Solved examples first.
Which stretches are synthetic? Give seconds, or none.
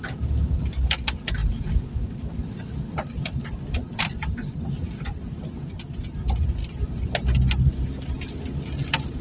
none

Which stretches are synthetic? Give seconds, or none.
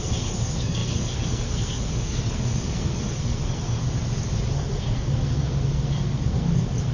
0.0-3.8 (codec, SNAC); 4.5-6.9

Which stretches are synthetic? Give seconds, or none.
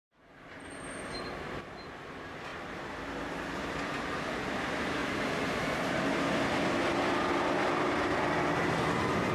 none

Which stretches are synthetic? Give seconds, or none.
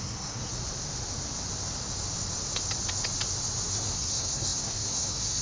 0.0-0.5 (codec, SNAC); 3.7-5.4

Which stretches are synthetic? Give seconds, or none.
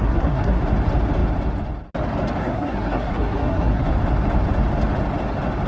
0.0-0.6 (codec, SNAC); 2.4-3.9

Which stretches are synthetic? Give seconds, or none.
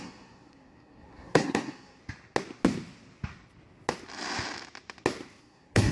0.0-2.0 (codec, SNAC); 5.4-5.9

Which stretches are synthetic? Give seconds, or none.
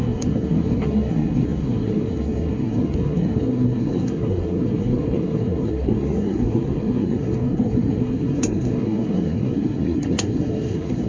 0.0-11.1 (codec, SNAC)